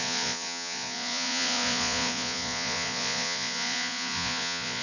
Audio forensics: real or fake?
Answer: fake